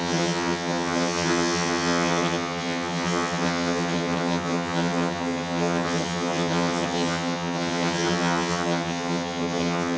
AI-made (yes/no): yes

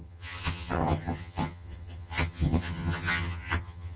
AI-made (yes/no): yes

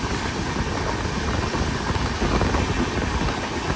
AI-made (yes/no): no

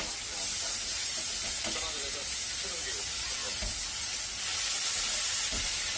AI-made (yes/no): no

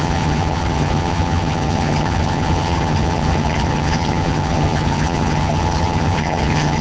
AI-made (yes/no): yes